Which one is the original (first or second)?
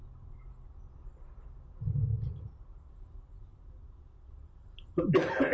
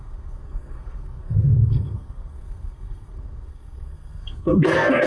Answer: first